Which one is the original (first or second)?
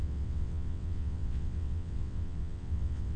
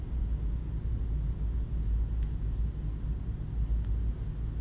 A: second